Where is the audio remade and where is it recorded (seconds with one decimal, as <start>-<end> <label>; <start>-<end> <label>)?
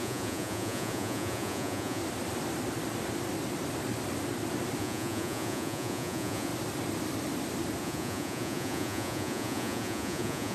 0.0-2.0 remade; 2.0-4.8 recorded; 4.8-6.5 remade; 6.5-7.8 recorded; 7.8-10.5 remade